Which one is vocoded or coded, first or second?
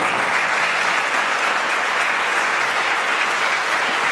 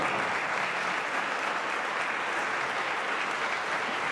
first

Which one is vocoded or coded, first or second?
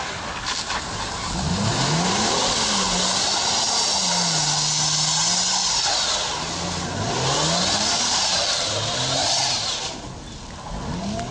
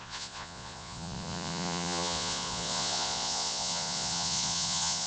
second